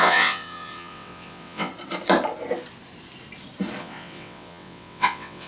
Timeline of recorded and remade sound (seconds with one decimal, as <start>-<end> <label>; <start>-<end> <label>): 0.0-1.7 remade; 1.7-3.8 recorded; 3.8-5.5 remade